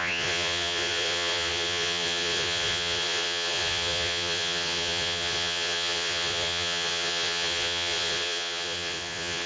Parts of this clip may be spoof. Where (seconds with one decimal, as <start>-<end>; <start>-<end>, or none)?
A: 0.0-9.5